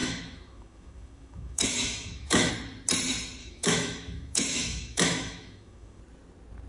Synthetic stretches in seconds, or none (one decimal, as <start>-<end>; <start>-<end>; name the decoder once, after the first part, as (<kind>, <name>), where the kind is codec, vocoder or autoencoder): 0.0-2.5 (autoencoder, DAC-VAE); 3.4-6.0